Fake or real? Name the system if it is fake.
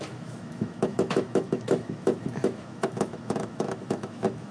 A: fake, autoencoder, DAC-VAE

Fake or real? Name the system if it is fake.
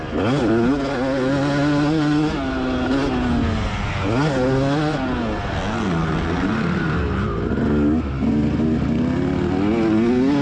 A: real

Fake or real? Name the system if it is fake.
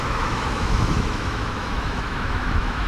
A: fake, autoencoder, DAC-VAE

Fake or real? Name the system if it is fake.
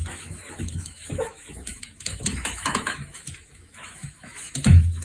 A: fake, autoencoder, DAC-VAE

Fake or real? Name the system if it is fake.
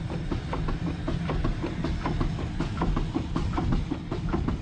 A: real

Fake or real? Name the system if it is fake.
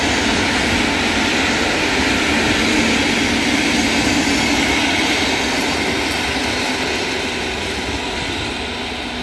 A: real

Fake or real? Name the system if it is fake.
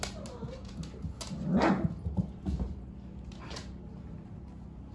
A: real